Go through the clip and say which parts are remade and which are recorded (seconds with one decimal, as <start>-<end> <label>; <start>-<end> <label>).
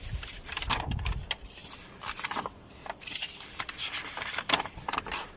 0.0-5.4 remade